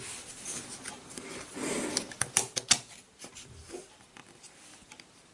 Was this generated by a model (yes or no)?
no